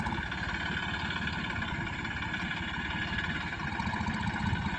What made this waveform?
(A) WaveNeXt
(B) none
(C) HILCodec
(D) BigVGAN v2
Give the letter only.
B